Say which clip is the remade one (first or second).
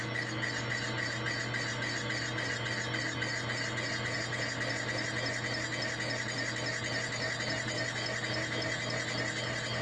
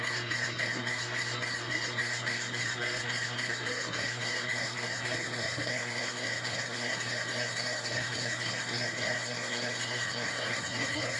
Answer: second